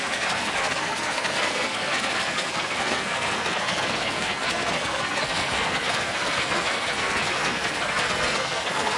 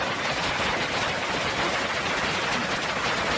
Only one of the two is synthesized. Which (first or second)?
first